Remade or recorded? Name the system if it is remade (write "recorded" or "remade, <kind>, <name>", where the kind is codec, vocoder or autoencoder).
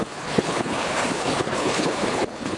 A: remade, codec, HILCodec